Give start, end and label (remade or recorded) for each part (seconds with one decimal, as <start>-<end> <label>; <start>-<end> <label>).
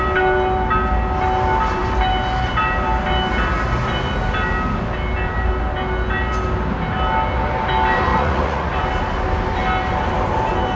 0.0-8.1 recorded; 8.1-8.8 remade; 8.8-10.8 recorded